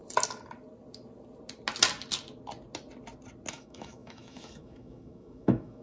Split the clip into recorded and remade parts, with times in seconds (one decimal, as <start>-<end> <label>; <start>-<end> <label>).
0.0-3.5 recorded; 3.5-5.8 remade